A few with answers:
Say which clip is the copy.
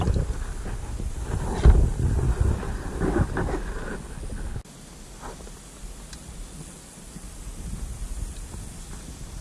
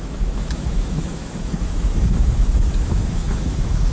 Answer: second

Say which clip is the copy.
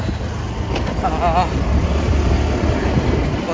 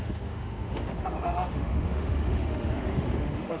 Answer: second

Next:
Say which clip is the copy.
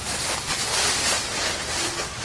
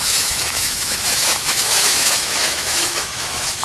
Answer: second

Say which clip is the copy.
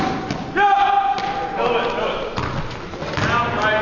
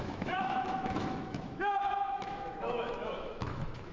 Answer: second